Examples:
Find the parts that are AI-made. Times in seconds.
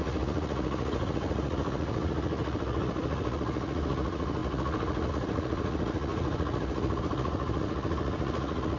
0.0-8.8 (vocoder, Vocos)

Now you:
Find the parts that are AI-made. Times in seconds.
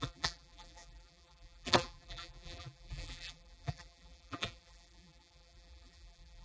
0.0-6.4 (vocoder, BigVGAN v2)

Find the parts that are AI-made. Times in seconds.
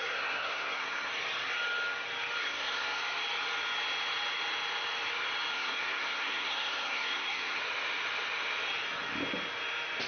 0.0-1.1 (codec, SNAC); 2.4-3.0; 5.5-7.6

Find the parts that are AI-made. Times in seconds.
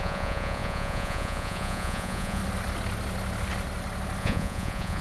0.0-2.4 (vocoder, Vocos); 4.2-5.0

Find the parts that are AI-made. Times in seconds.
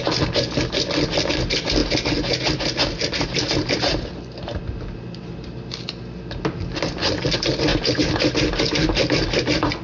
none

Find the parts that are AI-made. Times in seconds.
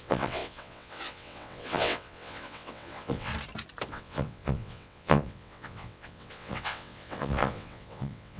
0.0-3.3 (vocoder, WaveNeXt); 3.9-8.4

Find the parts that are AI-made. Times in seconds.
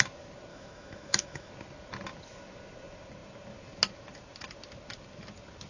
0.5-1.5 (autoencoder, DAC-VAE)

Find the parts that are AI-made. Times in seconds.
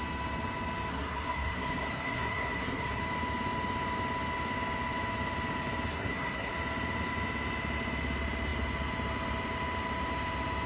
0.9-3.0 (codec, SNAC); 5.9-6.5